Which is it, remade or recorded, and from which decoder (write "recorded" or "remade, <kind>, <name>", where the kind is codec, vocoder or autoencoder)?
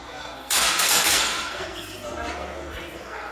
remade, codec, SNAC